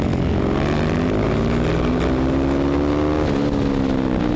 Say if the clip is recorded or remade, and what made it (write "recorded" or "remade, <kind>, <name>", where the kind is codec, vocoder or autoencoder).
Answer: recorded